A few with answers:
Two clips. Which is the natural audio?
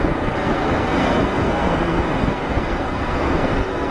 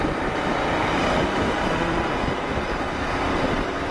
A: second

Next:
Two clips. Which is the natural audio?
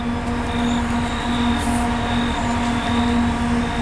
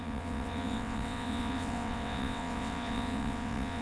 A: first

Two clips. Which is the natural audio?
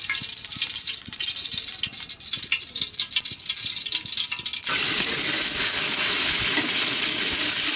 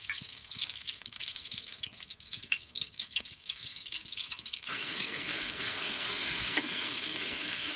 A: first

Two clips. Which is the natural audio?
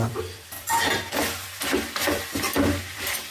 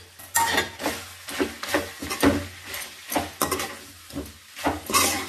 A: second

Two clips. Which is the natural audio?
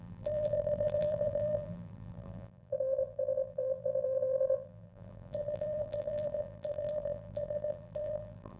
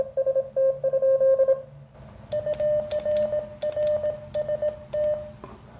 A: second